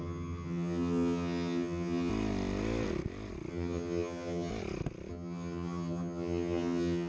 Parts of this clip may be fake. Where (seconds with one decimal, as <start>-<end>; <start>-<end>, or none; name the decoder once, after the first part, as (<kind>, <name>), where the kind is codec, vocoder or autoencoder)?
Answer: 0.0-2.1 (vocoder, HiFi-GAN); 3.5-4.5; 5.1-7.1

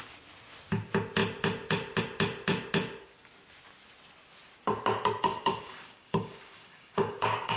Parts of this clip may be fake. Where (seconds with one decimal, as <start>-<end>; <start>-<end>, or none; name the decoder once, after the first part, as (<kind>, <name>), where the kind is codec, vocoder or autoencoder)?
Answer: 5.3-7.6 (codec, DAC)

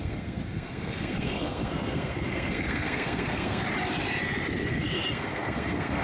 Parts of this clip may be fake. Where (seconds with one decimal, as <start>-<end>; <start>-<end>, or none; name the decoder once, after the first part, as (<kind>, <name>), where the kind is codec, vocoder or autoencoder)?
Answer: 0.0-3.6 (codec, SNAC); 4.7-6.0

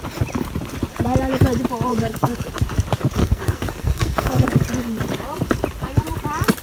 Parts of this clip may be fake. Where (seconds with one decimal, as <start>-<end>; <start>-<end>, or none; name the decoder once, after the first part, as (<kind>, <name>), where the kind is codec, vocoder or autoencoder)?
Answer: 1.9-2.5 (codec, SNAC); 3.2-4.6

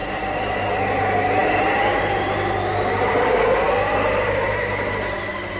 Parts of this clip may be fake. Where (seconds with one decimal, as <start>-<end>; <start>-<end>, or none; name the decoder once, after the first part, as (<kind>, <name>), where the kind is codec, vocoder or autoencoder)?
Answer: none

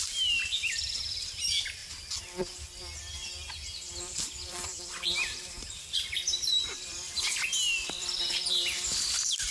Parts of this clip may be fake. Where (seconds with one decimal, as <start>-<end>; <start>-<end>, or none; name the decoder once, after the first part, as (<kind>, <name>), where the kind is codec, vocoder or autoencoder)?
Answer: 4.6-5.3 (vocoder, BigVGAN v2)